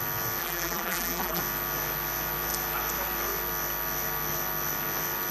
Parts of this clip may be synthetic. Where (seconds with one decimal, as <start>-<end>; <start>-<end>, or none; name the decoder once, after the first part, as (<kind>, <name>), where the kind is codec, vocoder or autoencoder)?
0.4-1.4 (vocoder, BigVGAN v2)